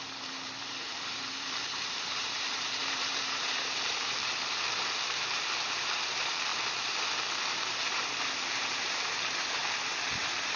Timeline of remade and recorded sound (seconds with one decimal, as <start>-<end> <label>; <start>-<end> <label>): 0.0-4.2 remade; 4.2-5.0 recorded; 5.0-6.5 remade; 6.5-7.9 recorded; 7.9-9.6 remade; 9.6-10.2 recorded; 10.2-10.6 remade